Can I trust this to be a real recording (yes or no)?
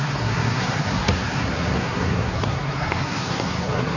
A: no